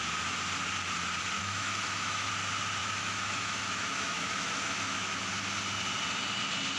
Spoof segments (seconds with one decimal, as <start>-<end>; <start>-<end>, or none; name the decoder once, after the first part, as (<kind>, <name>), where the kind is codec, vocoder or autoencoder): 1.4-2.3 (autoencoder, DAC-VAE); 2.8-5.2